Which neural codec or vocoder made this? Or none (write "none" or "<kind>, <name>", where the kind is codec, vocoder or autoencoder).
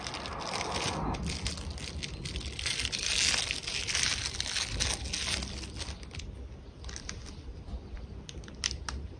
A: none